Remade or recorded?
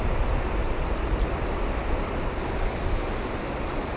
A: recorded